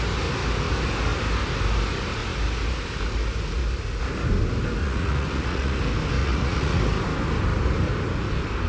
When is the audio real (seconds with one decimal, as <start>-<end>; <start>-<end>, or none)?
0.0-4.8; 5.8-6.2; 6.8-8.7